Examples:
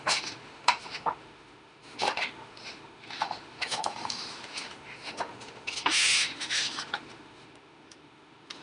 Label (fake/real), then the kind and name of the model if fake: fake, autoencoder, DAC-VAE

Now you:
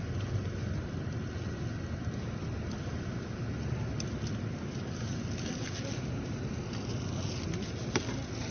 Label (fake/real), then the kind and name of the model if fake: real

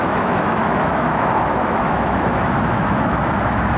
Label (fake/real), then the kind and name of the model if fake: fake, autoencoder, DAC-VAE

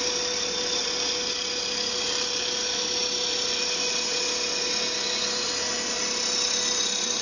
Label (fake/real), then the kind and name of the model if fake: real